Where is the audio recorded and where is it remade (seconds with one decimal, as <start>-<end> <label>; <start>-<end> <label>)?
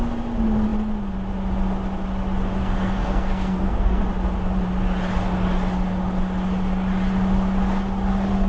0.0-2.6 recorded; 2.6-4.0 remade; 4.0-8.5 recorded